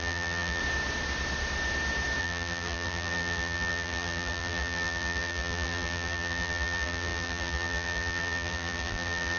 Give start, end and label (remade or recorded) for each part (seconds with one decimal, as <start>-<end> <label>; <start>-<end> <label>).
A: 0.0-0.6 remade; 0.6-2.2 recorded; 2.2-9.4 remade